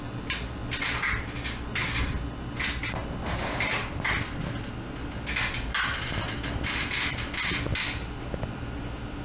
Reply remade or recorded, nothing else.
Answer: recorded